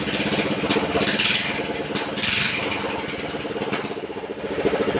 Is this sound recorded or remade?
recorded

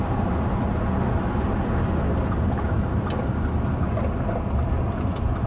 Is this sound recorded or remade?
recorded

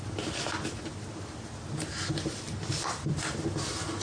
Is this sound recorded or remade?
recorded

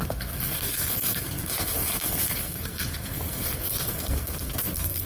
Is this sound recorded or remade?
remade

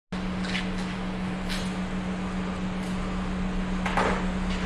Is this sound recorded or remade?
recorded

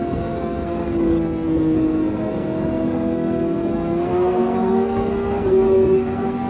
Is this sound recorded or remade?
remade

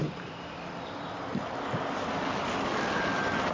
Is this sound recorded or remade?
recorded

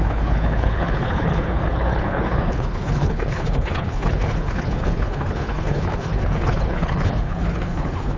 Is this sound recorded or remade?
remade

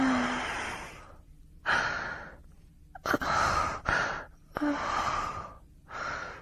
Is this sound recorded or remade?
recorded